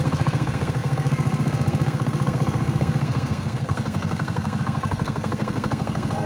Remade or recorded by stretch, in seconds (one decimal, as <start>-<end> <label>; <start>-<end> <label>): 0.0-6.3 remade